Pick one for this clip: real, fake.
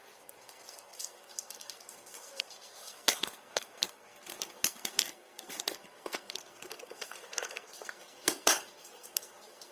fake